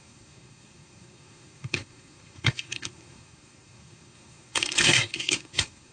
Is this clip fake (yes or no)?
yes